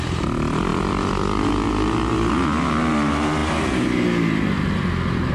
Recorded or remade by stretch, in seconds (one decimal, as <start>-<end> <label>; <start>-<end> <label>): 0.0-5.3 recorded